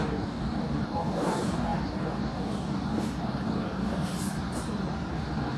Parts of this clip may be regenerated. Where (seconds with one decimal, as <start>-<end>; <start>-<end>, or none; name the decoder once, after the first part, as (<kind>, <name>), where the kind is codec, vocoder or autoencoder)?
0.0-4.1 (codec, DAC); 5.1-5.6